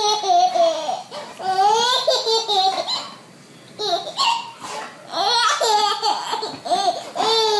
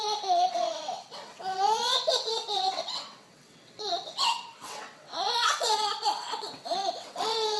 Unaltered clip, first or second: first